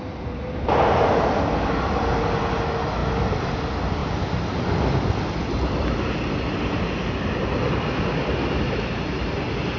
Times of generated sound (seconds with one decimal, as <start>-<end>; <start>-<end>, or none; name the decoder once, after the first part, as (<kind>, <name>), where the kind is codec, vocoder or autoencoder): none